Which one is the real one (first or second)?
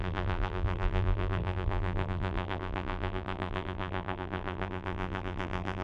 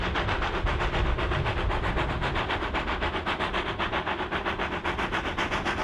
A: second